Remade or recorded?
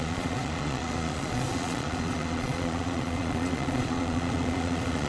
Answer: remade